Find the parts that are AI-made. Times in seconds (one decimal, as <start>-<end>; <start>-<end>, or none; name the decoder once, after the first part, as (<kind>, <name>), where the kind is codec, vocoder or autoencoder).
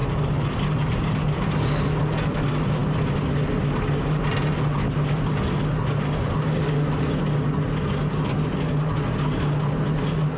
none